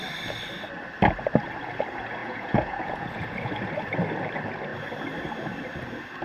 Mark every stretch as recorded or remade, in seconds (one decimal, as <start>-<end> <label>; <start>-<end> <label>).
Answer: 0.0-2.2 recorded; 2.2-3.5 remade; 3.5-6.2 recorded